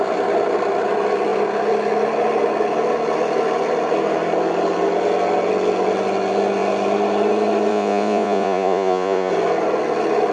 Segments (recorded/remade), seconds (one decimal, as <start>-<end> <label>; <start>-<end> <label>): 0.0-7.7 recorded; 7.7-9.3 remade; 9.3-10.3 recorded